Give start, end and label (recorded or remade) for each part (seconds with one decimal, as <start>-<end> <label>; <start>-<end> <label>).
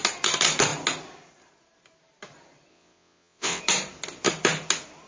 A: 0.0-2.7 recorded; 2.7-3.6 remade; 3.6-5.1 recorded